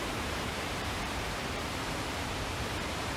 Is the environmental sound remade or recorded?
remade